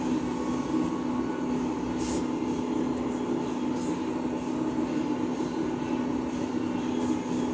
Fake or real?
real